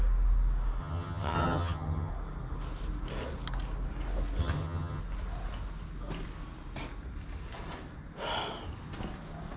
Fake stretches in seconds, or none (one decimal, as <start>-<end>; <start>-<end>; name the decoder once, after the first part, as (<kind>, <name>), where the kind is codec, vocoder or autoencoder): 0.8-2.1 (vocoder, HiFi-GAN); 4.4-5.0